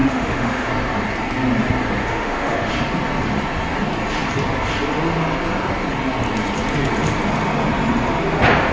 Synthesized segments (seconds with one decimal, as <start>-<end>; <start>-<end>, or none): 0.0-0.7; 2.0-2.7